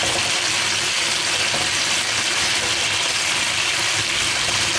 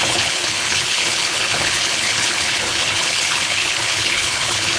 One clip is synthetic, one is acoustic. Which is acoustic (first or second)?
first